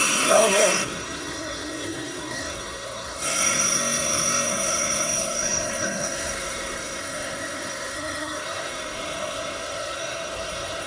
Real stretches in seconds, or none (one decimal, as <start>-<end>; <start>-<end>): none